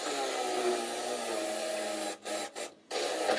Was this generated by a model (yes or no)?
no